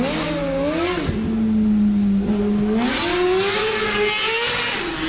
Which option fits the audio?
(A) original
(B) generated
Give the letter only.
A